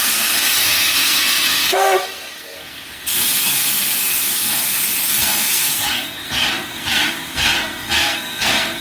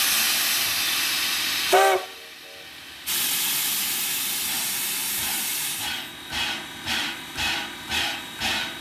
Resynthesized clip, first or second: first